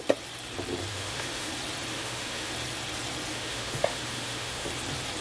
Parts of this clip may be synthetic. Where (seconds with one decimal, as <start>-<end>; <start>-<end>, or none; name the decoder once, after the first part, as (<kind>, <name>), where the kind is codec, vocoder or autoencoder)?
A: 0.9-1.5 (autoencoder, DAC-VAE); 1.9-2.5; 3.3-4.7